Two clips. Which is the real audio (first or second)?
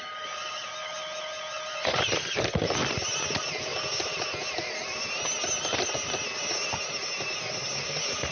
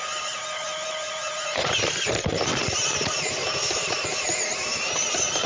first